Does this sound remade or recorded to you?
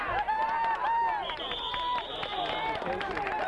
recorded